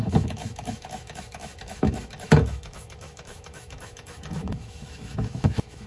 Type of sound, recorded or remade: remade